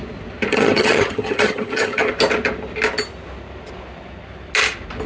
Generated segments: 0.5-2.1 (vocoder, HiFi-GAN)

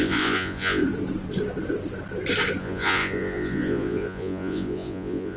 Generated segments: 0.0-0.8 (vocoder, Vocos); 2.6-5.4

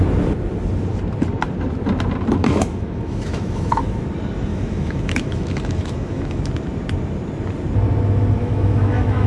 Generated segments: 2.4-4.0 (autoencoder, DAC-VAE); 4.5-6.4; 8.4-9.3

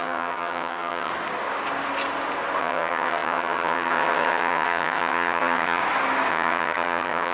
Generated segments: 0.0-1.1 (vocoder, HiFi-GAN); 2.6-5.8; 6.3-7.3

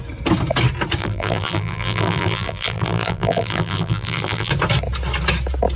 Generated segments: 1.0-4.5 (vocoder, BigVGAN v2)

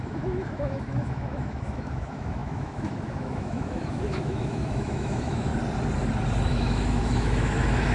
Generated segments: 0.0-5.5 (autoencoder, DAC-VAE); 6.5-7.9